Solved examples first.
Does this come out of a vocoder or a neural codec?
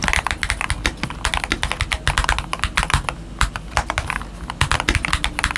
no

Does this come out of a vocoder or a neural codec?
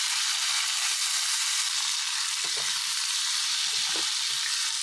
no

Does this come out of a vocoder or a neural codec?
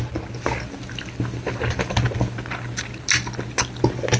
no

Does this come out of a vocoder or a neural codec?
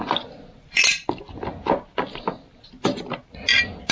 no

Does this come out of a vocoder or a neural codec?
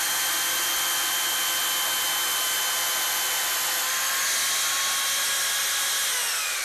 no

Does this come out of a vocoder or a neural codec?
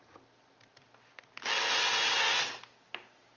no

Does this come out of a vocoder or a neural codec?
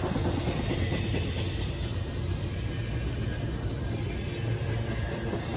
no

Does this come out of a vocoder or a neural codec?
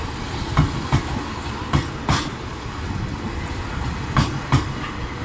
no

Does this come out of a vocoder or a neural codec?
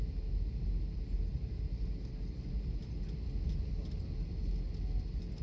no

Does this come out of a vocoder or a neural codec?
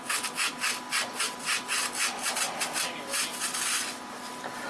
no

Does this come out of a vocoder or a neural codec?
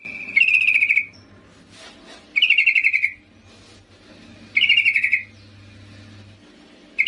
no